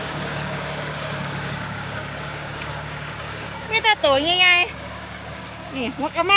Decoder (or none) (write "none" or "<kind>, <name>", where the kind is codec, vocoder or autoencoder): codec, DAC